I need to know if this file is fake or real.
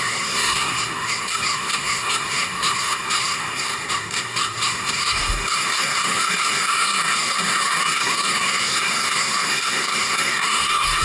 fake